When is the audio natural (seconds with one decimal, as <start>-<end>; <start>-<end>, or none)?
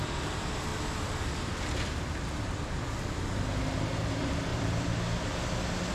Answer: 0.7-4.1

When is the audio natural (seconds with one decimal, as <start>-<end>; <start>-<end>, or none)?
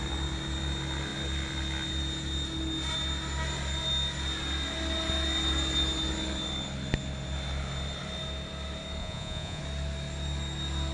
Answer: 0.0-9.0; 9.6-10.9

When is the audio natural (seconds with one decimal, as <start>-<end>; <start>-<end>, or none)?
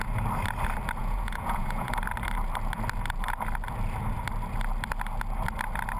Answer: 0.0-1.0; 1.9-6.0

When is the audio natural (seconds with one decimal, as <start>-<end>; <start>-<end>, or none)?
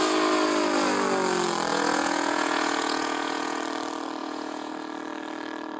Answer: 0.0-1.7; 3.6-4.2; 4.7-5.8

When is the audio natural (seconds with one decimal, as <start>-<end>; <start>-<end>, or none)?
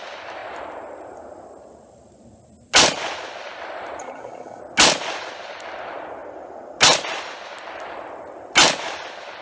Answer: 0.0-4.0; 4.6-9.4